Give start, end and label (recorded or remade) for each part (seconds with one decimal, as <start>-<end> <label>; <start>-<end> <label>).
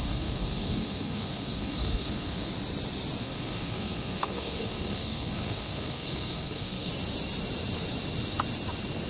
0.0-2.5 remade; 2.5-3.2 recorded; 3.2-6.9 remade; 6.9-9.1 recorded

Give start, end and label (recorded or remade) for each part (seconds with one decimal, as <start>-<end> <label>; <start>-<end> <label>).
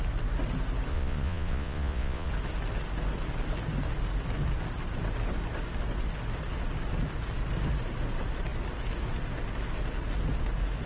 0.0-0.9 recorded; 0.9-2.3 remade; 2.3-10.9 recorded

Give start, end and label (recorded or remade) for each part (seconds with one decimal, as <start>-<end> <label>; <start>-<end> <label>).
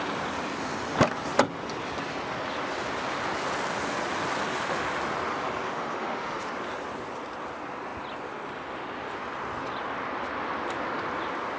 0.0-5.7 recorded; 5.7-6.5 remade; 6.5-11.6 recorded